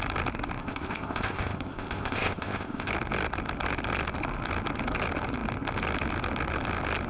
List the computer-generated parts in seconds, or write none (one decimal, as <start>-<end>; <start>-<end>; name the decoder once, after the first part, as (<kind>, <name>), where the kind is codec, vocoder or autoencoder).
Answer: 0.6-2.9 (codec, ZipCodec)